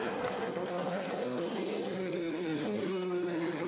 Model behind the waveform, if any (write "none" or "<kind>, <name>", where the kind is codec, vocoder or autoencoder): codec, SNAC